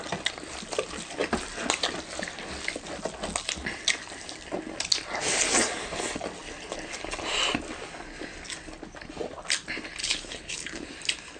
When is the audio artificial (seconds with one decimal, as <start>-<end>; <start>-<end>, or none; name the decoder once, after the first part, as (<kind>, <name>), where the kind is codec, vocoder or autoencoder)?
10.0-10.9 (codec, HILCodec)